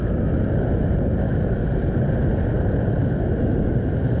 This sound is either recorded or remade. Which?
recorded